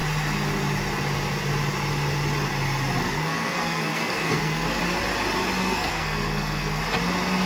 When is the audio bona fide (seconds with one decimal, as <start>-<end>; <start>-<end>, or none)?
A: 0.0-3.0; 4.8-5.6; 6.8-7.5